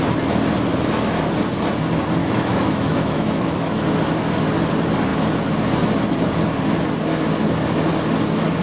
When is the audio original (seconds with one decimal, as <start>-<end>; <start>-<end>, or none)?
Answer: 0.0-0.7; 1.3-2.2; 4.0-8.6